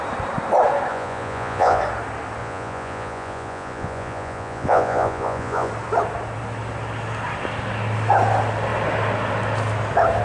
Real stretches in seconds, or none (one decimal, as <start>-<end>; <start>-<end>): 0.0-0.9; 1.8-2.4; 5.7-10.2